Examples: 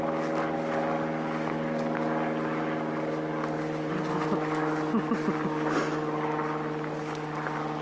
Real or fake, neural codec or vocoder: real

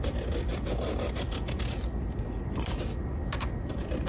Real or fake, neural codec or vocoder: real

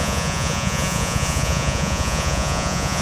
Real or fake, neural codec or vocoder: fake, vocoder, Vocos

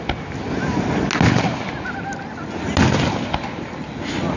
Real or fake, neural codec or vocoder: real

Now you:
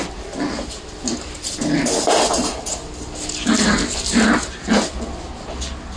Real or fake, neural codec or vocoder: real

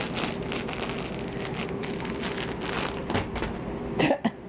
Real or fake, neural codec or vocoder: real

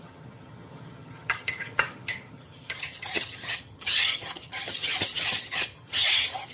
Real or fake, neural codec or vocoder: fake, vocoder, HiFi-GAN